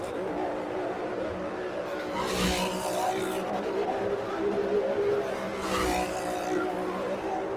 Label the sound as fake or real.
real